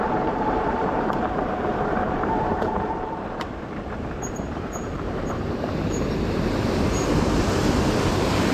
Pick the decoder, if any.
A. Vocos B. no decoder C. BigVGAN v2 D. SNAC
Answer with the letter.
C